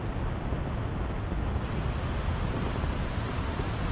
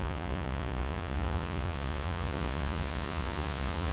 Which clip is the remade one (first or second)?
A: second